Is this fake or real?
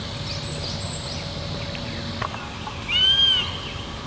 real